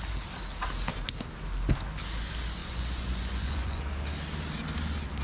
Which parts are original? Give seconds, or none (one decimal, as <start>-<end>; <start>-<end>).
0.0-2.6; 3.8-5.2